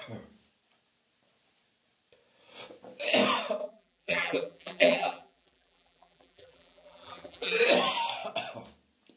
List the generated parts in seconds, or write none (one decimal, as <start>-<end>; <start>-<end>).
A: 3.6-7.6